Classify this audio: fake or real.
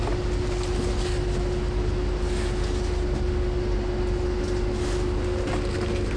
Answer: real